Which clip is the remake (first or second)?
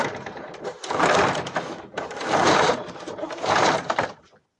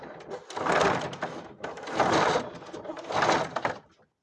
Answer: first